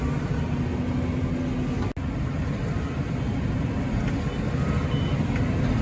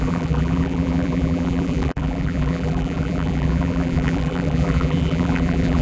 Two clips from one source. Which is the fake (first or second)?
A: second